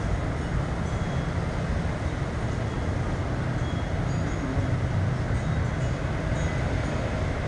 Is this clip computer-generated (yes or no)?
no